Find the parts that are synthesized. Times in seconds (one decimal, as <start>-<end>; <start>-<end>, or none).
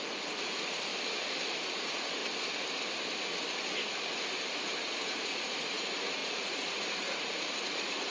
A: 0.0-0.9; 1.7-2.2; 4.9-8.1